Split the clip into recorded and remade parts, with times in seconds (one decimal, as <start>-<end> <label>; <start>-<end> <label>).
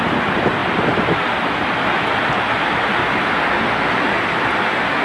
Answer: 0.0-5.0 recorded